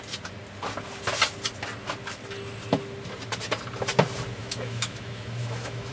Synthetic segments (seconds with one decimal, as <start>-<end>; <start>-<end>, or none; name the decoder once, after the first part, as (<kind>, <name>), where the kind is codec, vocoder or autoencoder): 4.4-5.9 (autoencoder, DAC-VAE)